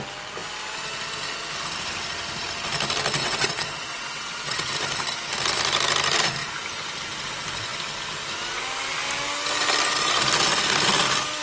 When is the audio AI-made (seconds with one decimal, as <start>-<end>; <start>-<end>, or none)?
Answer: 3.2-4.7